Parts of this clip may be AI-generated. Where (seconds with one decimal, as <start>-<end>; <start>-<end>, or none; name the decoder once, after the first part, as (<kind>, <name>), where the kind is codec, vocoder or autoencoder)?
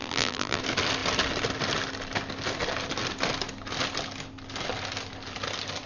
0.0-0.6 (vocoder, BigVGAN v2)